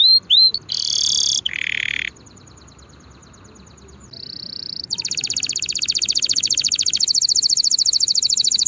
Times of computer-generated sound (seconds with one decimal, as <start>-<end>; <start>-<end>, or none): 0.0-0.5; 2.1-3.2